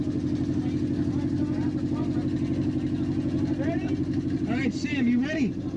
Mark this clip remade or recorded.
recorded